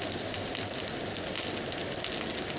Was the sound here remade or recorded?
recorded